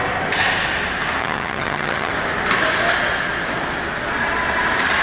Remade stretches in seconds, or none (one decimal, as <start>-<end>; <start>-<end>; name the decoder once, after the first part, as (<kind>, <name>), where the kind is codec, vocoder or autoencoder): 1.2-2.1 (vocoder, HiFi-GAN)